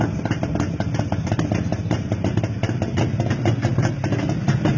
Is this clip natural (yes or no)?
yes